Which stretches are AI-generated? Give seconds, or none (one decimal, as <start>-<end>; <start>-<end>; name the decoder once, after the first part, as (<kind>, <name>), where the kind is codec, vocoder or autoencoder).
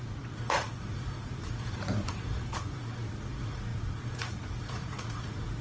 0.0-5.6 (vocoder, Vocos)